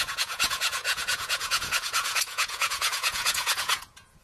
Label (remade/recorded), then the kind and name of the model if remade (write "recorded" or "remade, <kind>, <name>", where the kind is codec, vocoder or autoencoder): remade, vocoder, Vocos